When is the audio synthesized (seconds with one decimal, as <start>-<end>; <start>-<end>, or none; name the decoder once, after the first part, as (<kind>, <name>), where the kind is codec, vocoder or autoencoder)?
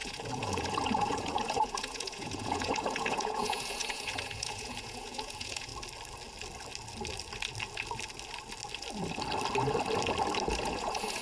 0.0-5.7 (vocoder, Vocos); 10.4-11.2